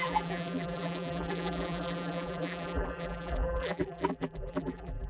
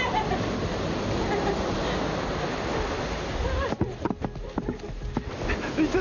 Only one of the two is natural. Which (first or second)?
second